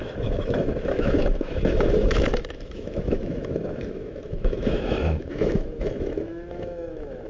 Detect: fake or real fake